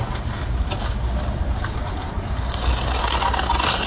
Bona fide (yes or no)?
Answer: yes